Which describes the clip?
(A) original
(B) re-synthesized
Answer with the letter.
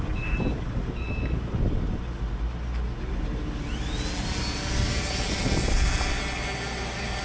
A